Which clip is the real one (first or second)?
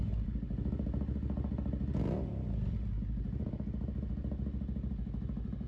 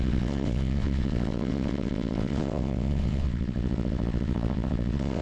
first